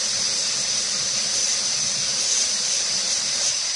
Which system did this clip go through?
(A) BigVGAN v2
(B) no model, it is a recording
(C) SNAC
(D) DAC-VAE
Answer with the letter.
A